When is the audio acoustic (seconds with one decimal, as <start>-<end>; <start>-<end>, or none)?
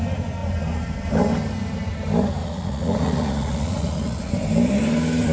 0.0-2.4; 4.3-5.3